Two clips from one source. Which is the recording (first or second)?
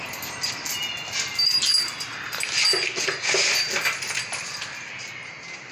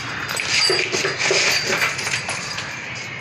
first